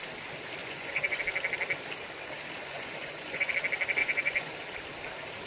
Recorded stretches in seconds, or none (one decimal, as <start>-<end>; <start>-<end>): 0.0-0.6; 1.2-2.6; 3.5-4.0; 4.6-5.5